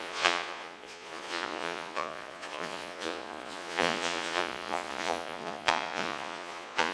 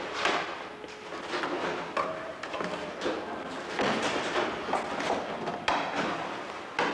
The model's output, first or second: first